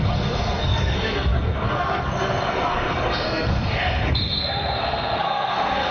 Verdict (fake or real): fake